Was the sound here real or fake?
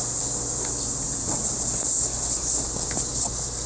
real